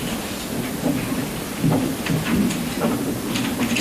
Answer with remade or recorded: recorded